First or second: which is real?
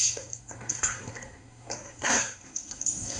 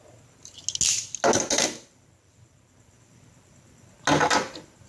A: second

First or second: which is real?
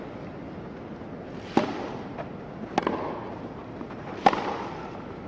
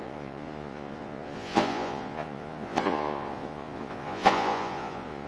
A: first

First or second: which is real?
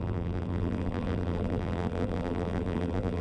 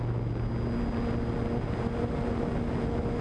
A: second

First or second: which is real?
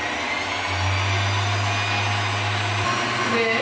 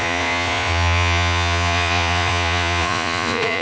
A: first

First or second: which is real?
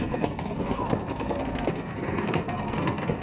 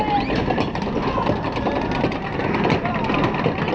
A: second